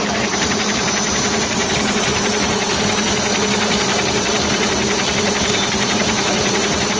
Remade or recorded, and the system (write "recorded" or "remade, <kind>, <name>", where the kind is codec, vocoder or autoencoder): remade, vocoder, BigVGAN v2